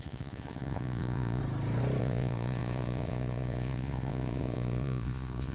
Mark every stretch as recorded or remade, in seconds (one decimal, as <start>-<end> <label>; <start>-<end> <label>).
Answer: 0.0-1.4 remade; 1.4-2.0 recorded; 2.0-5.5 remade